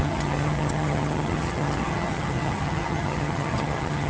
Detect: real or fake fake